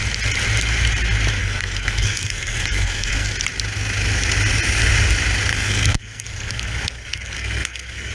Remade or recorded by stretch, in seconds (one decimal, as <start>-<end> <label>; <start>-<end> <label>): 0.0-1.4 recorded; 1.4-3.3 remade; 3.3-5.5 recorded; 5.5-8.1 remade